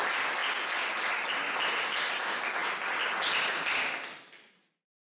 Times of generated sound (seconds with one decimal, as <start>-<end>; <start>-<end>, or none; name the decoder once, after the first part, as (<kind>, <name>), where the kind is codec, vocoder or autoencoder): none